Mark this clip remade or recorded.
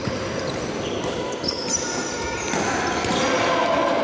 recorded